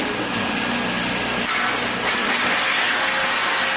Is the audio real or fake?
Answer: real